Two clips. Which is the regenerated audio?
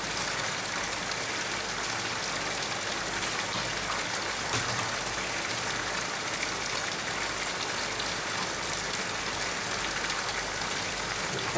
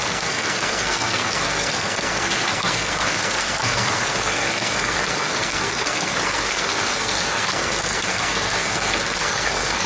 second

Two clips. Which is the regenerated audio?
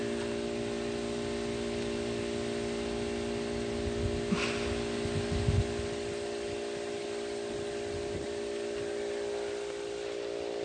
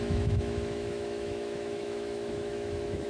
second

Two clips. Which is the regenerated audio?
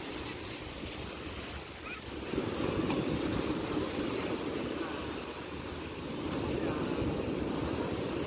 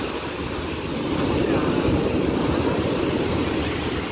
second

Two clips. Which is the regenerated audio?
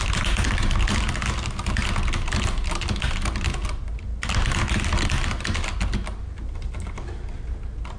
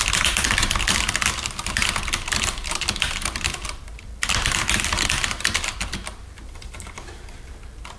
second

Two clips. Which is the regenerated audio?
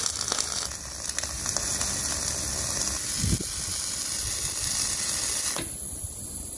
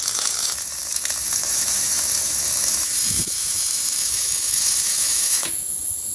second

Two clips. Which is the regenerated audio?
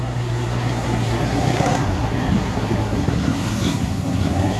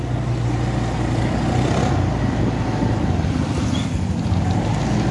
first